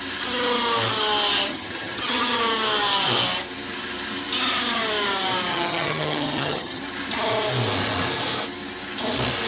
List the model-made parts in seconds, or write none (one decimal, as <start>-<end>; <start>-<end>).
1.5-2.4; 5.5-6.8